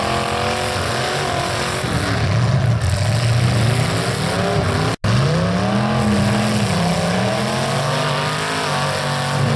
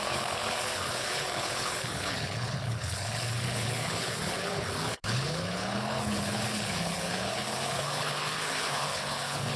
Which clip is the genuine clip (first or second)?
first